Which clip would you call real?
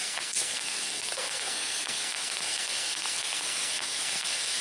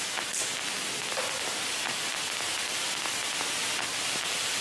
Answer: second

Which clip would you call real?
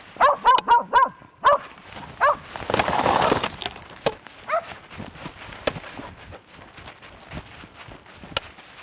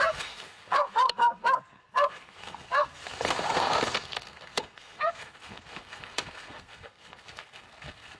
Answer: first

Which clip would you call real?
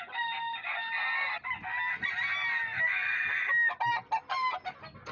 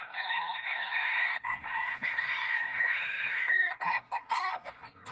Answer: first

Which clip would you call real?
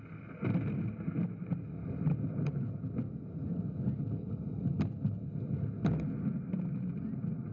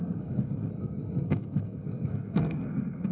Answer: first